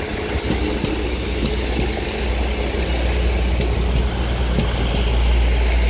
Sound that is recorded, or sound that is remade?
recorded